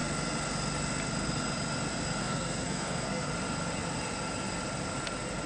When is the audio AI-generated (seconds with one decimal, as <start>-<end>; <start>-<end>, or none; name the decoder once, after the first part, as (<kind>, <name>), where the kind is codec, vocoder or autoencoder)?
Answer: 2.2-3.3 (codec, SNAC)